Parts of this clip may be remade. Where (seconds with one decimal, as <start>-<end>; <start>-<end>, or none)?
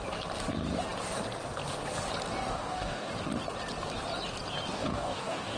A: 2.5-3.1; 4.8-5.6